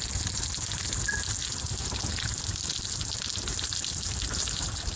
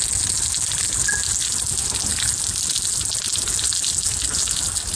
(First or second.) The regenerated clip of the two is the first